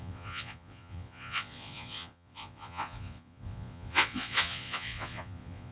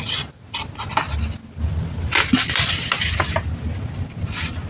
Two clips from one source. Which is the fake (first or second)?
first